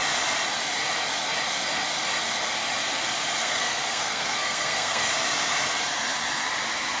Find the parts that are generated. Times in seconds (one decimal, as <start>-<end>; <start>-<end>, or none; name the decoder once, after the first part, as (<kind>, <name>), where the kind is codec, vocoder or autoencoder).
3.4-5.1 (codec, SNAC)